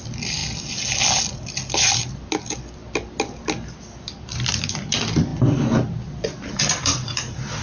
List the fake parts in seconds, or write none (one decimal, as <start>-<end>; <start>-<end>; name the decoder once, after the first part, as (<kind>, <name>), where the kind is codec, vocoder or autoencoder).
0.0-0.4 (vocoder, BigVGAN v2); 1.3-2.8; 3.8-7.6